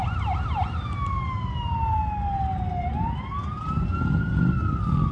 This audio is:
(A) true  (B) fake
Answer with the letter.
A